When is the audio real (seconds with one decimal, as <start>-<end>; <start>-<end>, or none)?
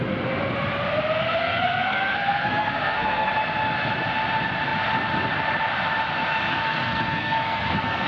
0.0-1.4; 3.3-6.5